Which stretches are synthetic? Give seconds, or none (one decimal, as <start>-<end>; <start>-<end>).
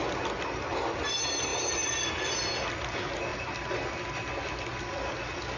none